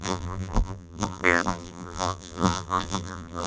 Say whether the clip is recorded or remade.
remade